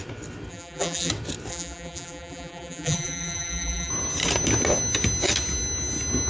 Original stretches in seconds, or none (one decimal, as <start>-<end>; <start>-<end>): 0.0-0.5; 1.1-1.5; 3.9-6.3